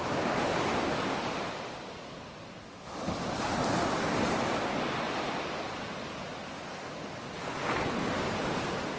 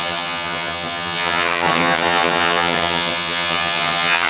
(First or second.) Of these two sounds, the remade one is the second